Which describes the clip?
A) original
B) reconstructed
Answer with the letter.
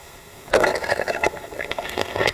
B